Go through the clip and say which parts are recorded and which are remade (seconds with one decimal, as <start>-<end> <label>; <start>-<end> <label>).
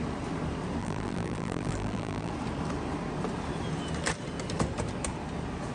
0.0-0.8 recorded; 0.8-2.3 remade; 2.3-5.7 recorded